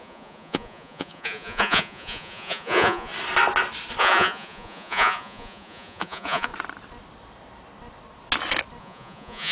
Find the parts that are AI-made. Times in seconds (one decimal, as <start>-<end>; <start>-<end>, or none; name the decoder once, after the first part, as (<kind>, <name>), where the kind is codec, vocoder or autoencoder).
0.0-3.1 (vocoder, Vocos); 4.0-6.5; 8.8-9.5